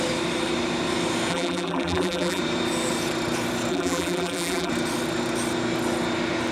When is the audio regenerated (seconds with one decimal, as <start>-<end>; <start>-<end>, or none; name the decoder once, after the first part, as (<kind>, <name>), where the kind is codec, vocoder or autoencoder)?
1.3-2.4 (vocoder, BigVGAN v2); 3.7-4.7